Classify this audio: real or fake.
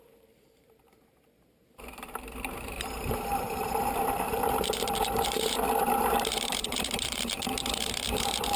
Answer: fake